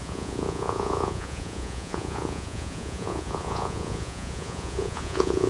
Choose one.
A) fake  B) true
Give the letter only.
A